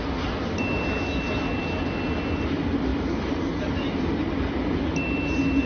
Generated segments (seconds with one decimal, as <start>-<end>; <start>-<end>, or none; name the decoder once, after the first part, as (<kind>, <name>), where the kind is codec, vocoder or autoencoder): 2.9-3.6 (vocoder, BigVGAN v2)